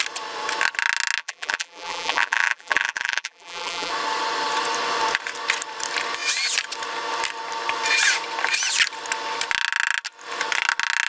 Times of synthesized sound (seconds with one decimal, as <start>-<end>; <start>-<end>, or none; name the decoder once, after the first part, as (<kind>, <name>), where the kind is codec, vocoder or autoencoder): 1.2-3.9 (vocoder, BigVGAN v2)